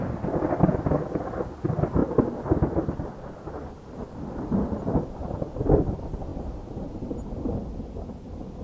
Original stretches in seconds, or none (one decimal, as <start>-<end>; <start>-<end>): 0.0-8.6